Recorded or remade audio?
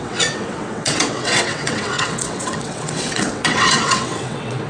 remade